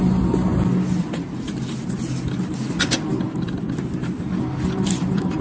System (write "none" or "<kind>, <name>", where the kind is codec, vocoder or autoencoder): none